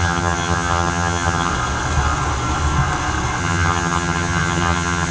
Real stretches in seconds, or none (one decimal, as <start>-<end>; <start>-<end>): 1.5-3.4